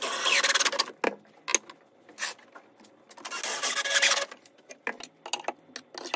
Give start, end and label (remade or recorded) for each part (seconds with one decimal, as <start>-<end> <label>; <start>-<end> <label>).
0.0-6.2 recorded